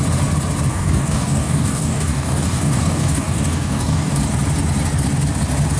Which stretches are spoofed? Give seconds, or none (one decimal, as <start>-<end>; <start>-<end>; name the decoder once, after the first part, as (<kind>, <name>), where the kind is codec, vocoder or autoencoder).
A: 0.7-4.2 (codec, DAC)